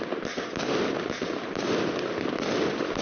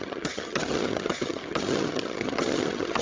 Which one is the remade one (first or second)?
second